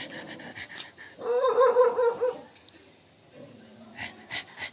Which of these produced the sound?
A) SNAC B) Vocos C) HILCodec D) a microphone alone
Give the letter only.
D